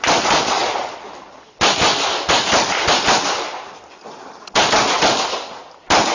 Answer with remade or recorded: recorded